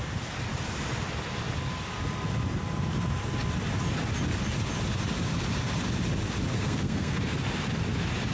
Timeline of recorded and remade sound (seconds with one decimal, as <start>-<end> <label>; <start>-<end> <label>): 0.0-6.5 recorded; 6.5-7.2 remade; 7.2-8.3 recorded